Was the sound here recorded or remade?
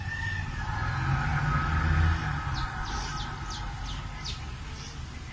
recorded